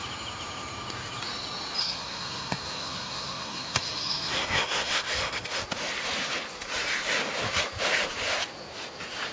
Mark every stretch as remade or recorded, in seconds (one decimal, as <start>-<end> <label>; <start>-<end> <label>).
0.0-1.8 recorded; 1.8-5.6 remade; 5.6-9.3 recorded